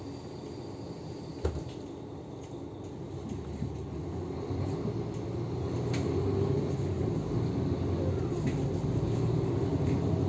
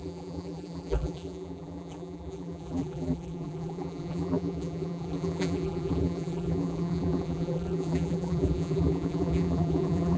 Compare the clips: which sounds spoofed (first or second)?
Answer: second